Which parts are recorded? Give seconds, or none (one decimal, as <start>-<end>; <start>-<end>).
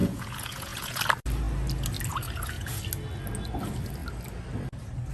1.0-2.1; 2.8-5.1